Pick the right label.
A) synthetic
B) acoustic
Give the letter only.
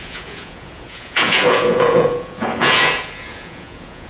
A